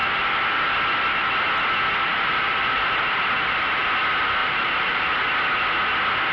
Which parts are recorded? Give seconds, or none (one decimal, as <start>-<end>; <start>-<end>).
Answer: 0.0-2.1; 2.8-4.4; 5.1-6.3